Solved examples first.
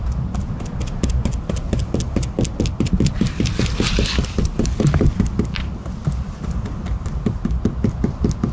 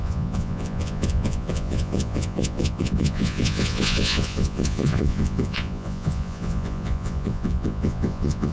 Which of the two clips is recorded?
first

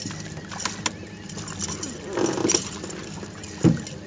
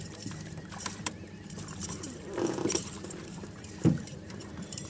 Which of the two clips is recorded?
first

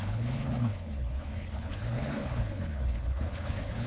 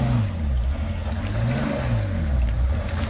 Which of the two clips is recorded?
second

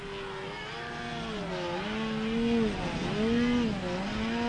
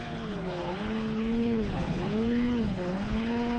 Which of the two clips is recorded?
first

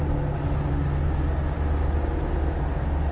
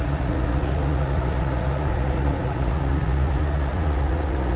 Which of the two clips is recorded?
first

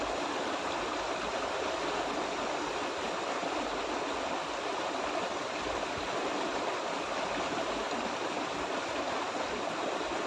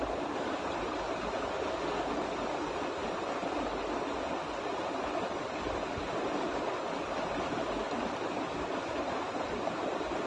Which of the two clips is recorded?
second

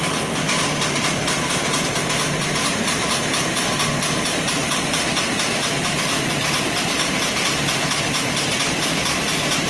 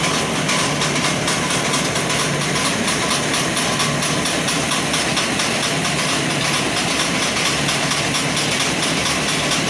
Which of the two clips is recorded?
second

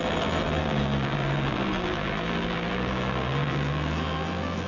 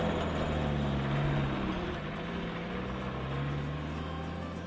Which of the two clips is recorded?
second